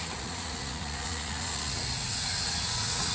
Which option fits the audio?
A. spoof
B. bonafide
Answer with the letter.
A